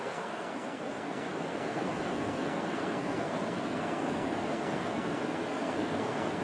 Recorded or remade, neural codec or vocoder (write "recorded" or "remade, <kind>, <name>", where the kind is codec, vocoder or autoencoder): remade, codec, SNAC